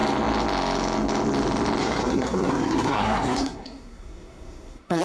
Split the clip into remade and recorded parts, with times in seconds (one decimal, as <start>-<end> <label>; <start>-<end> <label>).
0.0-1.8 recorded; 1.8-5.0 remade